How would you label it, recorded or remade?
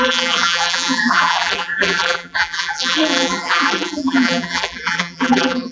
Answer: remade